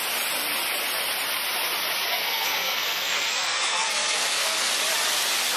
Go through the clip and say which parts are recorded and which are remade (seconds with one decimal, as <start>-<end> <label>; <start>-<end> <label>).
0.0-2.1 recorded; 2.1-4.7 remade; 4.7-5.6 recorded